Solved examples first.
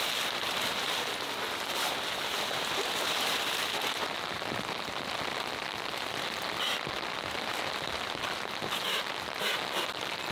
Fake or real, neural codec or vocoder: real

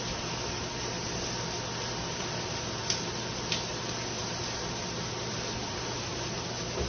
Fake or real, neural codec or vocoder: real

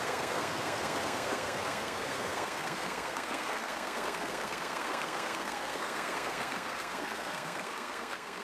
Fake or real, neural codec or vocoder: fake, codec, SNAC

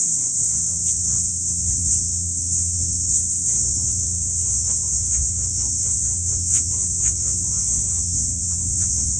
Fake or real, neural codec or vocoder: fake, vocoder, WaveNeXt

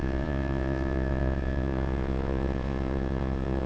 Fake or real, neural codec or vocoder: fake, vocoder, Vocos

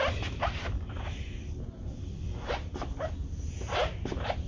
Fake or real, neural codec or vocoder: real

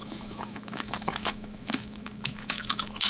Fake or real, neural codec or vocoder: fake, autoencoder, DAC-VAE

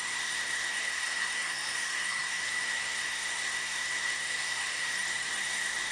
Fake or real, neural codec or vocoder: fake, codec, SNAC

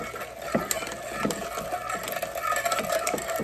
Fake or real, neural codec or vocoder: real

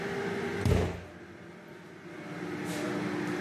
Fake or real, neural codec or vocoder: real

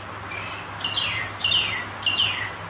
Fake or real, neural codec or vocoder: real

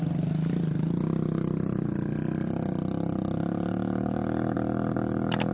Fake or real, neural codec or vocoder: real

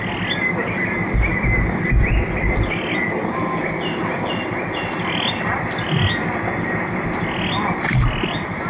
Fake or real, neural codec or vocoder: real